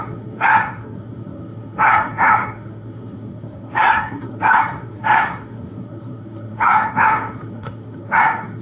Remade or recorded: remade